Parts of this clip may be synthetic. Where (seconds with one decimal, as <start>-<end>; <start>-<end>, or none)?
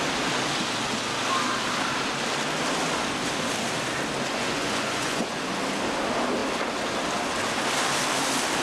4.3-5.4